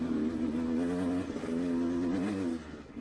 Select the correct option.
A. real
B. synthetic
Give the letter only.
A